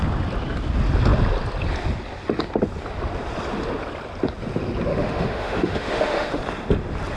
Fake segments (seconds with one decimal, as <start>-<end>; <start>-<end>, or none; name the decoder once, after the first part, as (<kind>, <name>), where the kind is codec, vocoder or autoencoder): 4.9-6.4 (autoencoder, DAC-VAE)